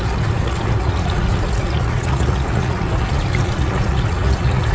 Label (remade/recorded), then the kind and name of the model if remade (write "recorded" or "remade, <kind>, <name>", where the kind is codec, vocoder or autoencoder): remade, vocoder, Vocos